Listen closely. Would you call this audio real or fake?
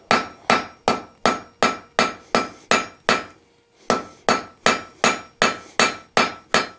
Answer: real